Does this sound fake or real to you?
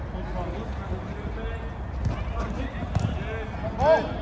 real